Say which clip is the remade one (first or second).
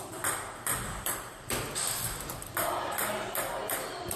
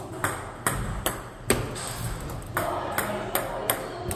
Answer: first